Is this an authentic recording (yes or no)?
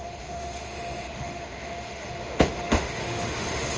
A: no